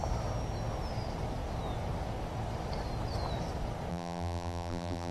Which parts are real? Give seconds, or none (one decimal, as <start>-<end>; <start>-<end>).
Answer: 0.0-3.9